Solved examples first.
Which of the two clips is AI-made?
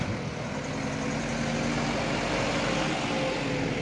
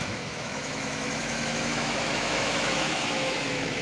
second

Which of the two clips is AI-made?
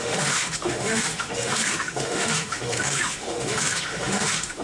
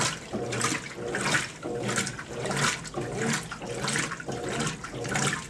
first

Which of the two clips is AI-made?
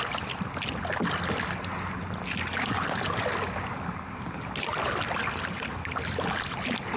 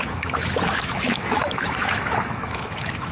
second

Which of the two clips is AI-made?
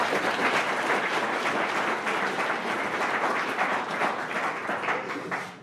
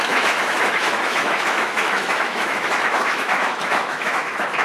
second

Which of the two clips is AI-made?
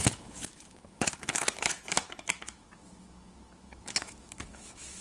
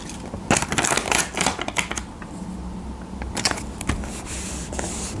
first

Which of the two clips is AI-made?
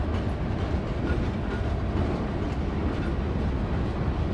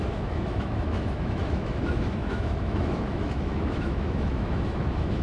second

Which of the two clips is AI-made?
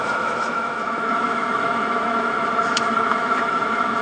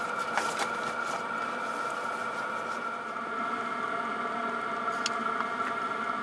first